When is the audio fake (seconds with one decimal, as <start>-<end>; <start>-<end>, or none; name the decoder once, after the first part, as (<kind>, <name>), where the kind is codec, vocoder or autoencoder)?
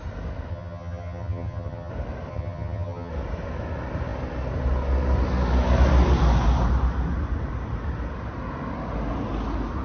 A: 0.5-1.9 (vocoder, HiFi-GAN); 2.3-3.1